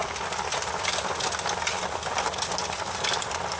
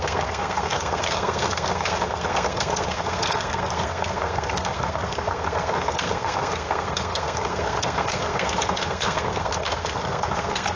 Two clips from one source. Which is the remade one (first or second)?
second